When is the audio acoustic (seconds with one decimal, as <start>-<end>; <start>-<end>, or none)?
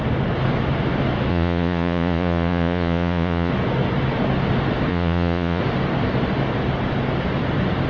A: 0.0-1.3; 3.5-4.9; 5.6-7.9